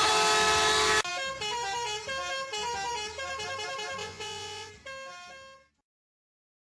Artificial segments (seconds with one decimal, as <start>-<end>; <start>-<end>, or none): 4.0-4.7